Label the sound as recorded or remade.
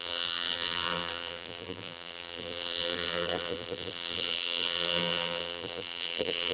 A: remade